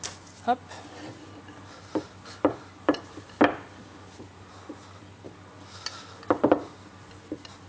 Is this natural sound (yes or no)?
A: yes